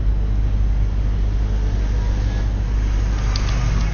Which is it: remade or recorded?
recorded